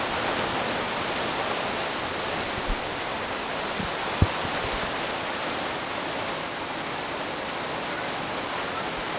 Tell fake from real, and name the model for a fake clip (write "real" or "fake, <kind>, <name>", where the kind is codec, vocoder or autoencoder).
real